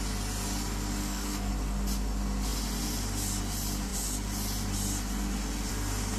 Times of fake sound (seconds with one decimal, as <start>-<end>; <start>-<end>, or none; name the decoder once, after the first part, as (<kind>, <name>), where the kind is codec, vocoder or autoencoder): 1.0-1.5 (codec, SNAC)